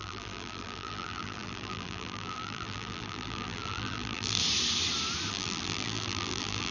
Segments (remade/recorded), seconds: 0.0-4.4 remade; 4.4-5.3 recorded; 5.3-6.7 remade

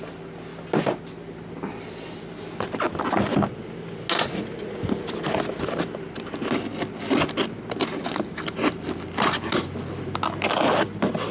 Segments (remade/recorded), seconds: 0.0-11.3 recorded

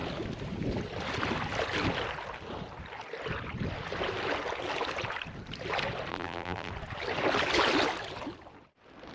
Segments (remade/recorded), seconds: 0.0-6.1 recorded; 6.1-6.7 remade; 6.7-9.1 recorded

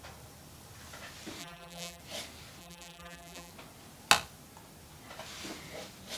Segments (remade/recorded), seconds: 0.0-1.4 recorded; 1.4-2.0 remade; 2.0-2.6 recorded; 2.6-3.5 remade; 3.5-6.2 recorded

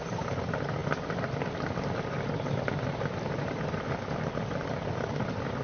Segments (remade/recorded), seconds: 0.0-0.8 recorded; 0.8-1.5 remade; 1.5-5.6 recorded

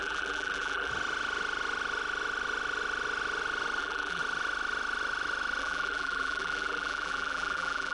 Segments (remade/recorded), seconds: 0.0-0.9 remade; 0.9-3.8 recorded; 3.8-4.2 remade; 4.2-5.6 recorded; 5.6-7.9 remade